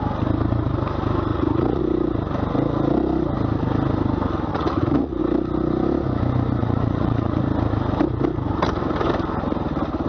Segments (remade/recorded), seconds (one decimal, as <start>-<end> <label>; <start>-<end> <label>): 0.0-1.3 recorded; 1.3-1.8 remade; 1.8-4.5 recorded; 4.5-5.2 remade; 5.2-6.6 recorded; 6.6-7.4 remade; 7.4-10.1 recorded